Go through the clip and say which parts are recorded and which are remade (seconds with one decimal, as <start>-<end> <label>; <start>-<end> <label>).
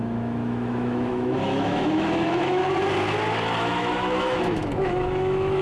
0.0-2.6 remade; 2.6-3.6 recorded; 3.6-5.6 remade